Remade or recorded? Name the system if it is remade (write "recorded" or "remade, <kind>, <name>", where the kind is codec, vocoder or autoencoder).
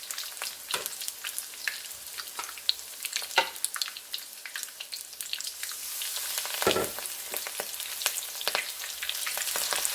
recorded